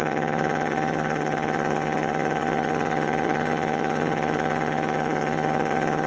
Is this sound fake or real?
fake